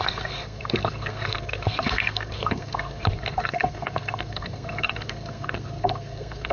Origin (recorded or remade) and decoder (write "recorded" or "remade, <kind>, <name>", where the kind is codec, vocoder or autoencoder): remade, codec, SNAC